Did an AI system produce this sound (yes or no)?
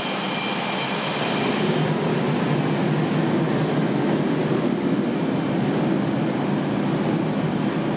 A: no